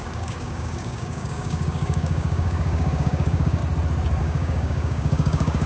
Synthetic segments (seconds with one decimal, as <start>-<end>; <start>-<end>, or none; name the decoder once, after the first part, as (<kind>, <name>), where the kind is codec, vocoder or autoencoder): 0.0-3.6 (codec, DAC); 4.2-5.7